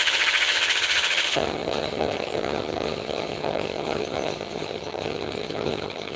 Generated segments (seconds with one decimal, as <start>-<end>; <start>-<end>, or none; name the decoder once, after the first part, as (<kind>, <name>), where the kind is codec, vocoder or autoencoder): 0.0-6.2 (vocoder, HiFi-GAN)